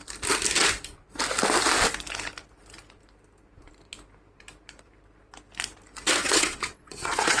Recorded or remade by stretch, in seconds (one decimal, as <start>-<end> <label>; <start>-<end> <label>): 0.0-6.2 recorded; 6.2-7.4 remade

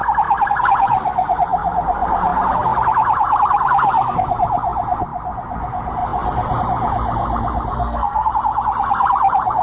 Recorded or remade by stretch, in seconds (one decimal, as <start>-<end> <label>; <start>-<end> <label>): 0.0-7.7 recorded; 7.7-8.3 remade; 8.3-9.6 recorded

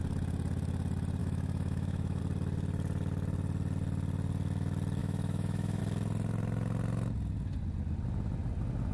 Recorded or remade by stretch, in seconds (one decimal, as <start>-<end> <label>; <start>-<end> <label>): 0.0-1.2 recorded; 1.2-2.2 remade; 2.2-5.0 recorded; 5.0-5.8 remade; 5.8-8.9 recorded

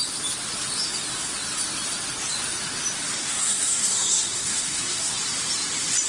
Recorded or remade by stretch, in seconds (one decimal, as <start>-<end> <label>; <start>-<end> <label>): 0.0-3.2 recorded; 3.2-5.2 remade; 5.2-6.1 recorded

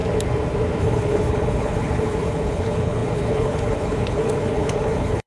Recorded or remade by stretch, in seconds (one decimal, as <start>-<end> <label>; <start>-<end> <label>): 0.0-0.8 recorded; 0.8-5.3 remade

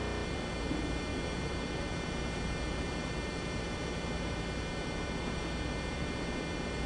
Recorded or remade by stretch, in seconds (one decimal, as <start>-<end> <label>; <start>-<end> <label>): 0.0-6.9 remade

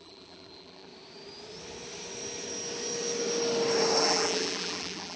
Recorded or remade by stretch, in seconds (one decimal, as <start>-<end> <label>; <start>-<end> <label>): 0.0-0.9 remade; 0.9-4.0 recorded; 4.0-5.2 remade